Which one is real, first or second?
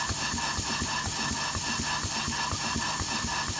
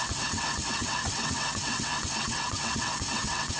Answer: first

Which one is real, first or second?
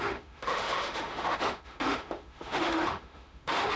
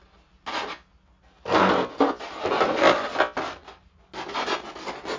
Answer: second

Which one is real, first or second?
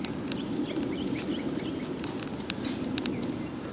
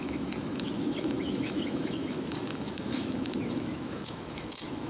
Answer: first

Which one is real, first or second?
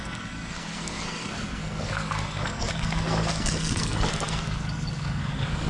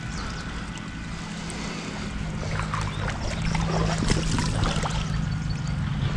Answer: second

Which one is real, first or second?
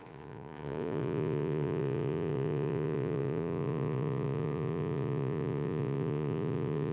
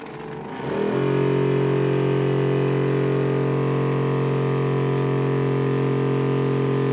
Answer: second